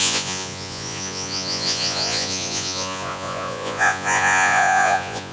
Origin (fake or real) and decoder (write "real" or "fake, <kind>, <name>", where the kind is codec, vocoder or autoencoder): fake, vocoder, Vocos